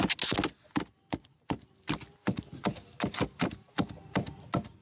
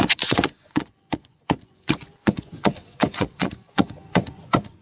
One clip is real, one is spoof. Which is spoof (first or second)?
second